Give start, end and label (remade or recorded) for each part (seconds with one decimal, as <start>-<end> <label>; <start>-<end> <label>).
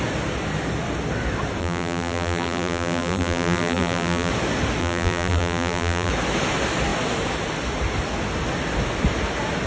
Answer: 0.0-1.6 recorded; 1.6-4.3 remade; 4.3-4.8 recorded; 4.8-6.1 remade; 6.1-9.7 recorded